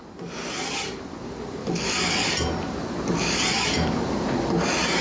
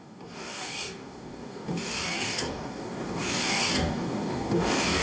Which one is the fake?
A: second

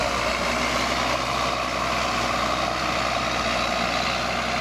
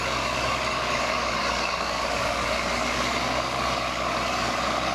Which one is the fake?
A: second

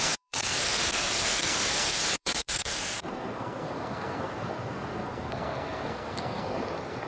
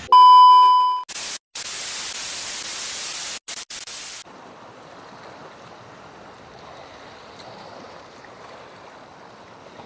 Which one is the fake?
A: first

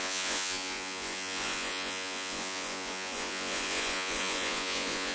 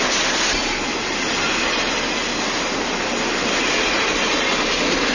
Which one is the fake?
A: first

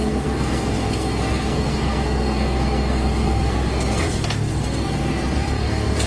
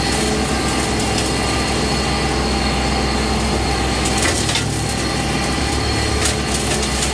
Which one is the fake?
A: first